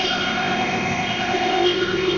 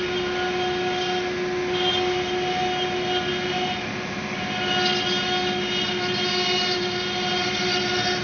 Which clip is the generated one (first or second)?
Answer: first